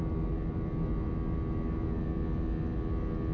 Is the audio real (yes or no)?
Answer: yes